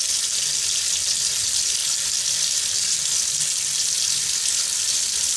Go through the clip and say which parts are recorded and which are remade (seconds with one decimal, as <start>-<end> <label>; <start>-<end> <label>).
0.0-5.4 recorded

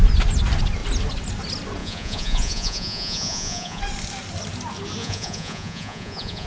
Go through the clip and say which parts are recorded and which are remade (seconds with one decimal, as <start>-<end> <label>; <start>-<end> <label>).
0.0-1.8 recorded; 1.8-3.8 remade; 3.8-5.0 recorded; 5.0-6.5 remade